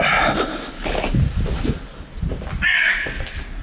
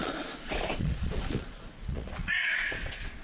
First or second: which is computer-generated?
second